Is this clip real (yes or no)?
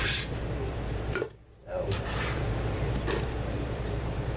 no